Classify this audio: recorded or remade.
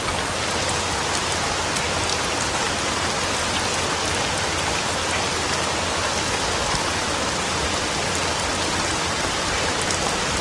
recorded